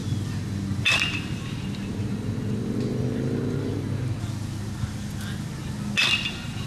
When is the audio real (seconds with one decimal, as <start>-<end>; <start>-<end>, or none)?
0.0-6.7